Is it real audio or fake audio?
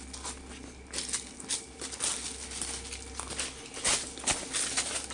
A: real